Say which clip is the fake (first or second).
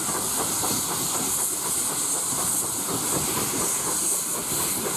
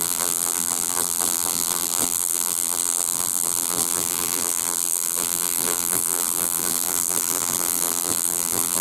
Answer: second